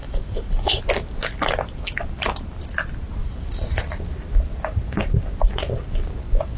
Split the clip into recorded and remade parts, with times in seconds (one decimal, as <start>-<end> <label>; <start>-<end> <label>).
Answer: 0.0-0.8 remade; 0.8-3.2 recorded; 3.2-3.8 remade; 3.8-6.6 recorded